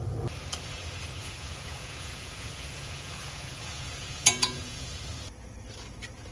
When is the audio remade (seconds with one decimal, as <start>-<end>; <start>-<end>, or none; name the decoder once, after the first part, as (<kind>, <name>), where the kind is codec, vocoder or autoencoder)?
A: 1.2-5.0 (vocoder, Vocos)